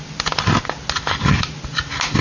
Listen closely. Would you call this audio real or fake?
real